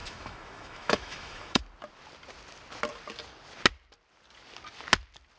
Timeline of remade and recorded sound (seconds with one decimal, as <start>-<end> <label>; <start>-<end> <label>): 0.0-1.6 remade; 1.6-5.4 recorded

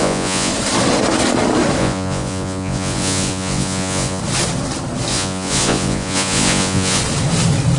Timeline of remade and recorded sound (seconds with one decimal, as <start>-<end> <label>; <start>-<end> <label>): 0.0-0.5 remade; 0.5-1.8 recorded; 1.8-4.2 remade; 4.2-5.1 recorded; 5.1-7.0 remade; 7.0-7.8 recorded

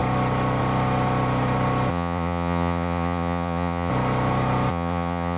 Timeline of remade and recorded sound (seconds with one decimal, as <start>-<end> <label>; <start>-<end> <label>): 0.0-1.9 recorded; 1.9-3.9 remade; 3.9-4.7 recorded; 4.7-5.4 remade